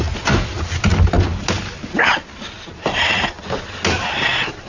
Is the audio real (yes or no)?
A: yes